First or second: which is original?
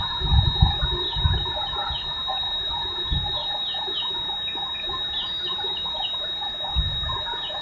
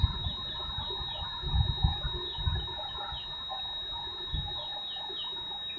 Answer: second